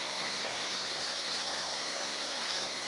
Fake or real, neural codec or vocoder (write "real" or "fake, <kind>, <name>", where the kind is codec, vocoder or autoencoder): fake, codec, SNAC